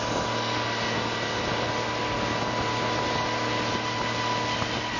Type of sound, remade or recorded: recorded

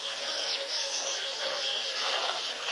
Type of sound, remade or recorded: remade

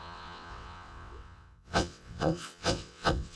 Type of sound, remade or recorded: remade